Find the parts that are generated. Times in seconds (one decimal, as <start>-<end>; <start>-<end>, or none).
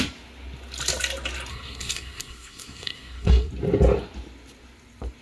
1.5-3.5